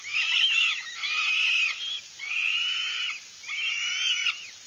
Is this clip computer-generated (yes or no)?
no